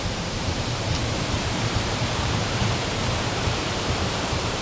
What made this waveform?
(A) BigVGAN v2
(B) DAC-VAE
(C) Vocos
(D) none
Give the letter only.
A